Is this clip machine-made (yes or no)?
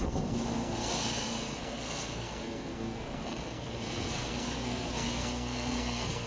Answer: yes